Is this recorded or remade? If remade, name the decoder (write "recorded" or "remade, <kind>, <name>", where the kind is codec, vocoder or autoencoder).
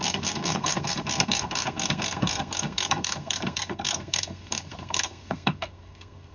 remade, codec, SNAC